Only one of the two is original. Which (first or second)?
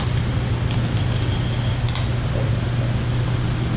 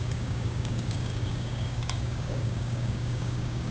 first